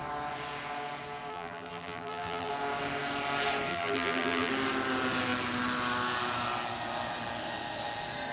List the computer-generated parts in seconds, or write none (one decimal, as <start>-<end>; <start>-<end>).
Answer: 1.3-2.5; 3.7-4.5